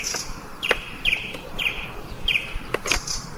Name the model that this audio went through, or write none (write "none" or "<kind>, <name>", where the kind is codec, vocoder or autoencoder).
vocoder, BigVGAN v2